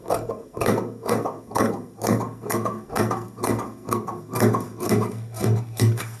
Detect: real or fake fake